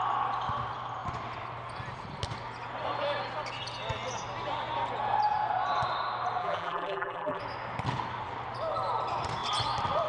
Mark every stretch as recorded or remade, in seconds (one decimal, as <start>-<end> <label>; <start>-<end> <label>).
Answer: 0.0-6.4 recorded; 6.4-7.4 remade; 7.4-10.1 recorded